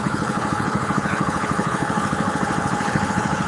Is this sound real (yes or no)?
no